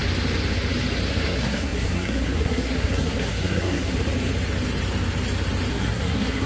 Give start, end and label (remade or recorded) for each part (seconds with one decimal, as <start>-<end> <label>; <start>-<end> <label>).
0.0-1.1 recorded; 1.1-4.1 remade; 4.1-5.7 recorded; 5.7-6.5 remade